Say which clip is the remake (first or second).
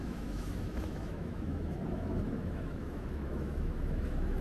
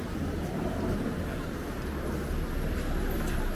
first